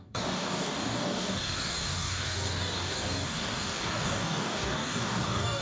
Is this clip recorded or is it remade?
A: remade